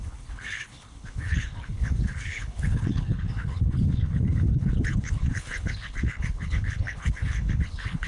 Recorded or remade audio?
remade